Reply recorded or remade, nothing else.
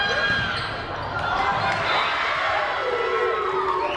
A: recorded